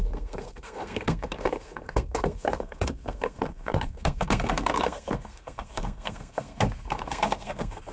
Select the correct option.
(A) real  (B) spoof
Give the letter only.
B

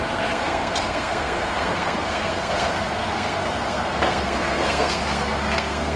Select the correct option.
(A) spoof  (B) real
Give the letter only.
A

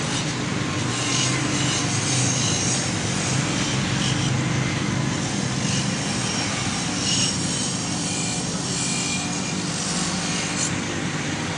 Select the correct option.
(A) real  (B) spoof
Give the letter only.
A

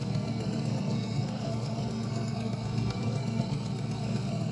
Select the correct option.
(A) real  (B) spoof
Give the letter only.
B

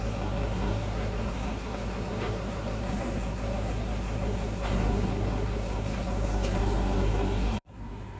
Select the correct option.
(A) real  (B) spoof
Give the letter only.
B